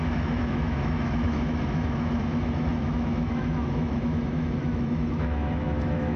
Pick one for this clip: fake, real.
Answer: fake